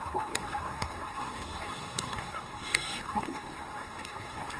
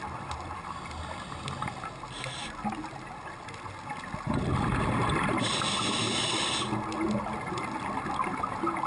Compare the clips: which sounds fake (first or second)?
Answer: first